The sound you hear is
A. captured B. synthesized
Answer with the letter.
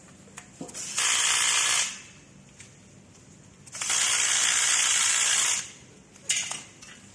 A